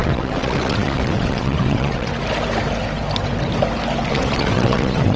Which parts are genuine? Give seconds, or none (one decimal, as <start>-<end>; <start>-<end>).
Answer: 2.1-4.1